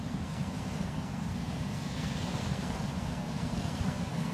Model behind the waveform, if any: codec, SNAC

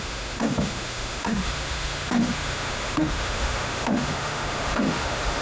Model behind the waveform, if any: autoencoder, DAC-VAE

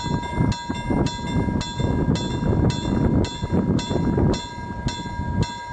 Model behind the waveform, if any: none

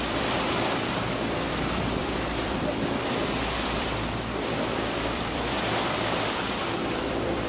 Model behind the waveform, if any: vocoder, BigVGAN v2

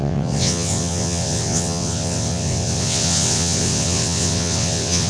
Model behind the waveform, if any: vocoder, WaveNeXt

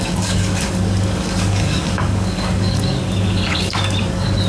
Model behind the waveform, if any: codec, DAC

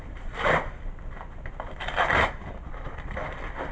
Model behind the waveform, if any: none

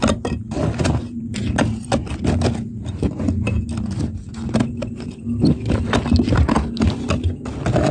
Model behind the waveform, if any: none